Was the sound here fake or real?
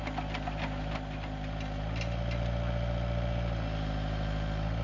real